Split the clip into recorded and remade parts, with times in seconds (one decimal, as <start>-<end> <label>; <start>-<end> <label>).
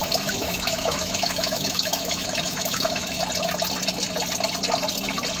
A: 0.0-3.2 remade; 3.2-5.4 recorded